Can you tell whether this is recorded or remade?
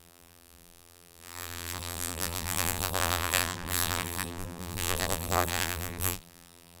remade